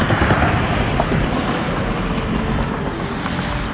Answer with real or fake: real